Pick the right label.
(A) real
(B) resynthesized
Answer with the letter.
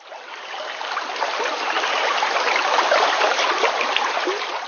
A